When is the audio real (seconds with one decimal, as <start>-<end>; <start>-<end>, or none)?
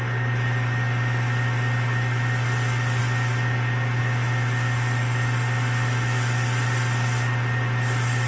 0.0-8.3